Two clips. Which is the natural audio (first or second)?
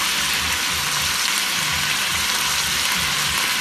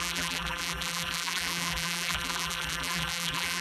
first